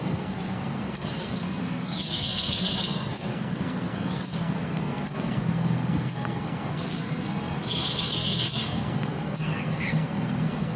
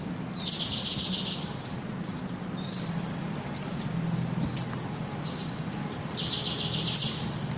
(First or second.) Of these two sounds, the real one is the second